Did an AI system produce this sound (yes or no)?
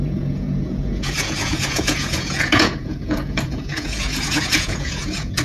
yes